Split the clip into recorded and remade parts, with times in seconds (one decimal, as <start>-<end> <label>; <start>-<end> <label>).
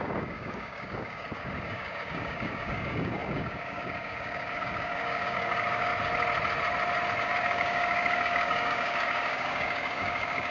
0.0-5.9 remade; 5.9-7.2 recorded; 7.2-10.5 remade